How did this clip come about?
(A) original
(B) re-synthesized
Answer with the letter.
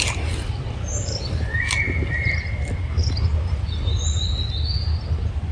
A